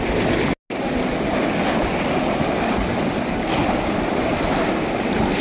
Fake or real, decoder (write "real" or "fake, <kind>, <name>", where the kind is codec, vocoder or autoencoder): real